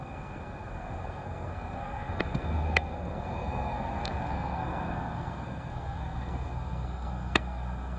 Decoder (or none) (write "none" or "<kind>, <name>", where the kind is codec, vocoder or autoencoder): codec, SNAC